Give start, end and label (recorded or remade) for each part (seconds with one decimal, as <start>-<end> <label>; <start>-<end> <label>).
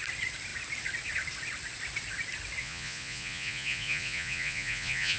0.0-2.6 recorded; 2.6-5.2 remade